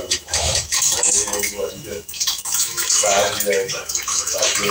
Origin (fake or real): fake